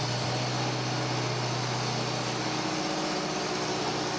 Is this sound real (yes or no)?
yes